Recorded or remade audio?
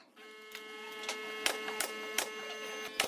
recorded